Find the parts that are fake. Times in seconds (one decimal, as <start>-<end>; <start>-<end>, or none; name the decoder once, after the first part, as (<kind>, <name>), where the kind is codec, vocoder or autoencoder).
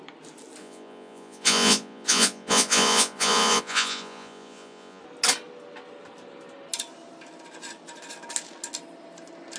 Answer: 0.6-5.0 (vocoder, Vocos)